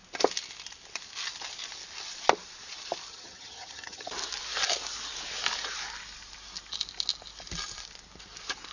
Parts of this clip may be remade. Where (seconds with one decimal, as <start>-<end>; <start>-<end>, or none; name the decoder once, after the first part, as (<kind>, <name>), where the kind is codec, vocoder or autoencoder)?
3.1-4.1 (vocoder, HiFi-GAN)